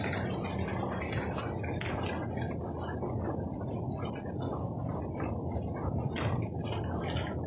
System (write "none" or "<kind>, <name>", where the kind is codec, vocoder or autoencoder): none